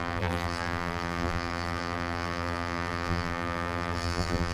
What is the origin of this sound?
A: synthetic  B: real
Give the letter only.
A